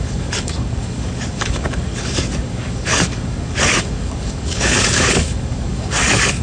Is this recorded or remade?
remade